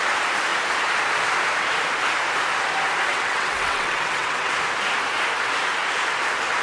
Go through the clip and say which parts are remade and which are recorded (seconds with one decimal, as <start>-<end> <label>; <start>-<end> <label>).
0.0-3.1 recorded; 3.1-4.5 remade; 4.5-6.6 recorded